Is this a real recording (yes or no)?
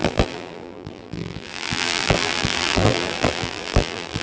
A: no